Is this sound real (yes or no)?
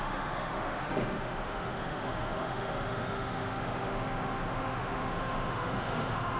no